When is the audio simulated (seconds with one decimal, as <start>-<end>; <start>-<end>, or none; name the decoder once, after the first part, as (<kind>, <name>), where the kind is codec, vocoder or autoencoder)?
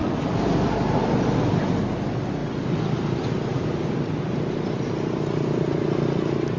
none